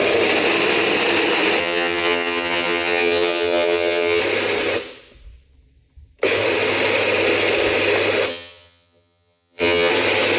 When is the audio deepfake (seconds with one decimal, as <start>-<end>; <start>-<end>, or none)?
1.6-4.2; 8.3-9.9